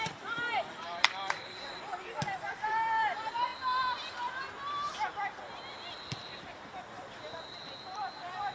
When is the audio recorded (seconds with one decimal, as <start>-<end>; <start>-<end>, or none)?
3.5-6.1

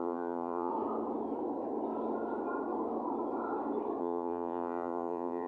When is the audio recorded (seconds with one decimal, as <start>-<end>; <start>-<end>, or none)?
0.7-4.0